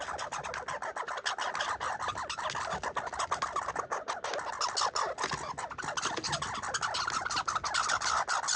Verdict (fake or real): real